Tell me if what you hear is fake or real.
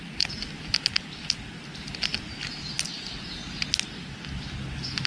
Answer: real